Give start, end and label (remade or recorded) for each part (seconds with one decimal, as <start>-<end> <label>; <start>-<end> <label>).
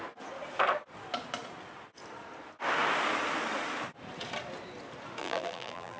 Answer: 0.0-5.2 recorded; 5.2-6.0 remade